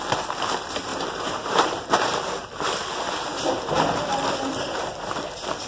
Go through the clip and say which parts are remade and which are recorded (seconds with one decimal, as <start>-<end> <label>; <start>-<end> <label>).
0.0-0.9 recorded; 0.9-1.8 remade; 1.8-5.7 recorded